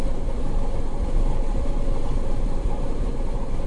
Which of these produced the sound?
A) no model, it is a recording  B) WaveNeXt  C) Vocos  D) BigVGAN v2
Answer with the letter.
D